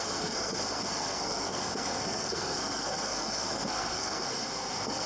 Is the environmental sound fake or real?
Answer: fake